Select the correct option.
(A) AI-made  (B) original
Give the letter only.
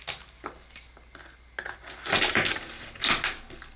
B